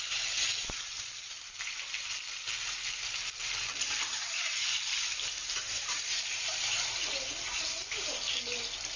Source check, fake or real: fake